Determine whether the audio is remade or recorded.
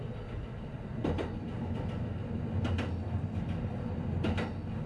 recorded